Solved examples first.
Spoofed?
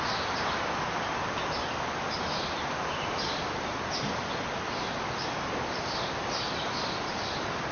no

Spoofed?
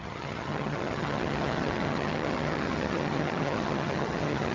yes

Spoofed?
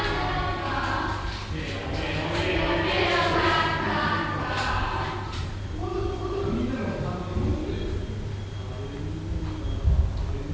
no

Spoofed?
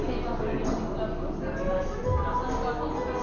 no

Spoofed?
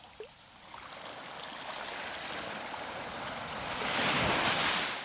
no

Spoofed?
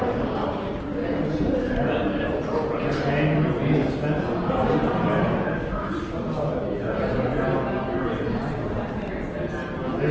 no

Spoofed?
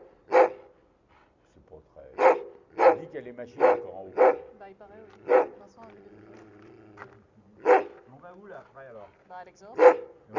no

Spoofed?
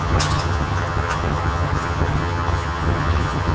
yes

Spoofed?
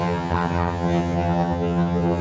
yes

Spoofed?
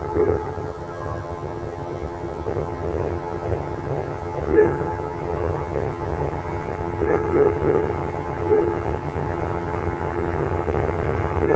yes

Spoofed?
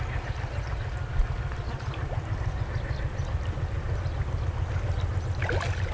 no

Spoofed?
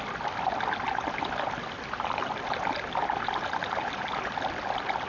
no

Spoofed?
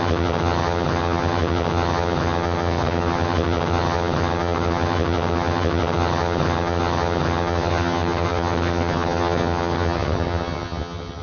yes